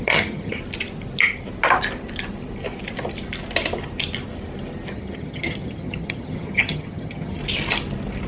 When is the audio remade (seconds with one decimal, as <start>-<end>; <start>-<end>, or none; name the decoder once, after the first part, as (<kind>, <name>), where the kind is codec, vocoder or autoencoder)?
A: 0.0-0.6 (vocoder, HiFi-GAN); 4.9-7.4